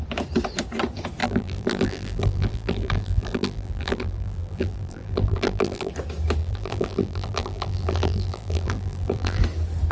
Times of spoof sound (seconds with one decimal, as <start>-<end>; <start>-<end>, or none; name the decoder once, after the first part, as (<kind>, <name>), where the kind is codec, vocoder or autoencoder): 1.2-5.9 (vocoder, BigVGAN v2); 6.4-9.4